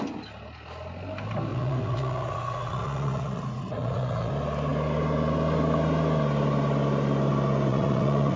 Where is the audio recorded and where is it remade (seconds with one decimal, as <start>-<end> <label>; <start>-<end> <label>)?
0.0-1.5 recorded; 1.5-4.3 remade; 4.3-7.7 recorded; 7.7-8.4 remade